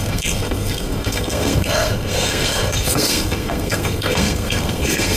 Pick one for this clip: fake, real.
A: fake